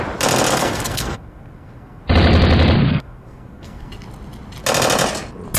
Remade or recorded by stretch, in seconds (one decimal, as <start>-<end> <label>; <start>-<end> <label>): 0.0-0.5 recorded; 0.5-2.0 remade; 2.0-2.9 recorded; 2.9-3.9 remade; 3.9-5.6 recorded